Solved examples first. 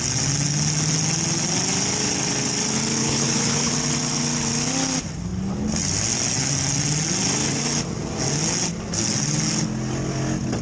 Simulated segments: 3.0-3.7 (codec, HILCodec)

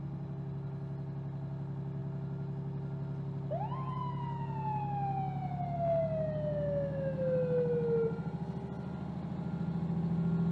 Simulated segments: none

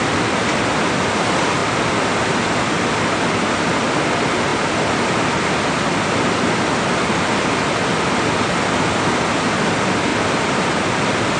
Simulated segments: none

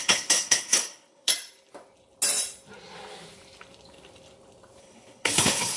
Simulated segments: 0.0-1.3 (codec, HILCodec); 4.8-5.8